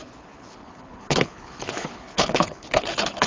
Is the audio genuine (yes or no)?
no